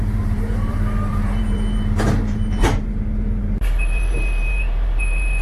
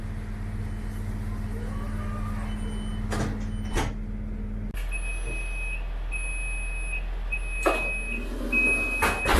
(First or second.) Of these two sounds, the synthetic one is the first